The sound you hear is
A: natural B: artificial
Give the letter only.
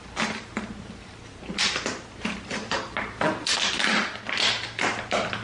A